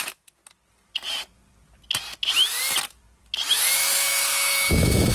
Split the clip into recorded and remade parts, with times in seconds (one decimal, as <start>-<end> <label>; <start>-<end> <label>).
0.0-0.4 remade; 0.4-3.5 recorded; 3.5-5.1 remade